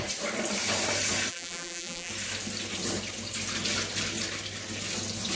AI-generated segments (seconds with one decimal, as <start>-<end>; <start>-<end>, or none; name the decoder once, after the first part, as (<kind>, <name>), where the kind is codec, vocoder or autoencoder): 1.3-2.1 (vocoder, BigVGAN v2)